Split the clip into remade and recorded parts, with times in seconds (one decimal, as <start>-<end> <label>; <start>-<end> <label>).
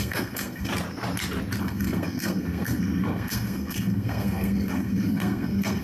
0.0-0.7 remade; 0.7-1.6 recorded; 1.6-5.8 remade